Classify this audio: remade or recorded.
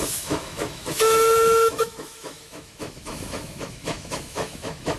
remade